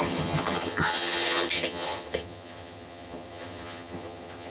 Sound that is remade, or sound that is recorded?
remade